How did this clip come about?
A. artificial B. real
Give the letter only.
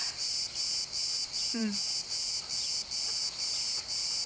A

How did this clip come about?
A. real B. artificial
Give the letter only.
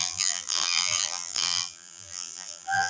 B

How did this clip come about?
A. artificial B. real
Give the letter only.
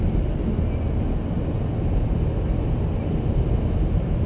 B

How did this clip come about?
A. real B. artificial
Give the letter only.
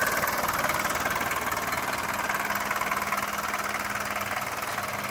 A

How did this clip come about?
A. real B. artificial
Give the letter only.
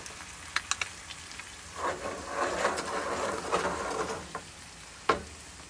A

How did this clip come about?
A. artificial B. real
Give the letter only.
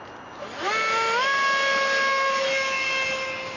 B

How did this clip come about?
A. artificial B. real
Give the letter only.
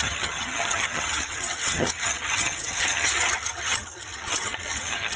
A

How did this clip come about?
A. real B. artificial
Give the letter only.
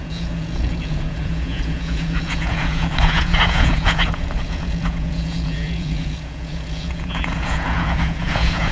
B